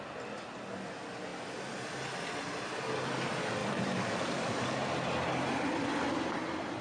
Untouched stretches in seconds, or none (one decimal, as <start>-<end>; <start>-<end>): 0.0-3.6; 4.6-6.8